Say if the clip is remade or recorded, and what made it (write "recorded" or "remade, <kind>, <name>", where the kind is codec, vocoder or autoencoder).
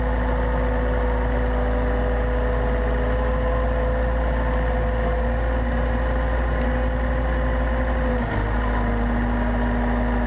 recorded